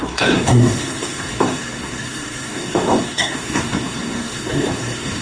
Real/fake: fake